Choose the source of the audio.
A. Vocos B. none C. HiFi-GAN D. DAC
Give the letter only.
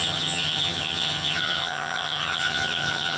C